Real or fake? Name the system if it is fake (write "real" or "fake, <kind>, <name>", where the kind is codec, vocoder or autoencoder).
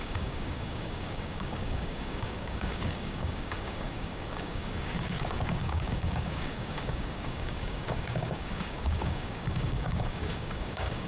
fake, codec, DAC